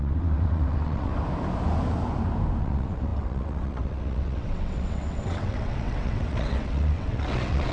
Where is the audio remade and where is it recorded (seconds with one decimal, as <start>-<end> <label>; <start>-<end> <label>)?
0.0-1.1 remade; 1.1-2.6 recorded; 2.6-7.7 remade